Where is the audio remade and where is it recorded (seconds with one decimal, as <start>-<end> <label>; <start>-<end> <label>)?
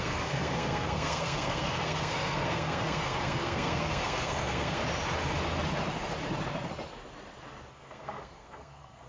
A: 0.0-4.8 remade; 4.8-7.7 recorded; 7.7-9.1 remade